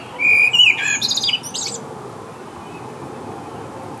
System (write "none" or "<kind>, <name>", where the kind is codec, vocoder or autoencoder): none